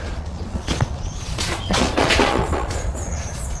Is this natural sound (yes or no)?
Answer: no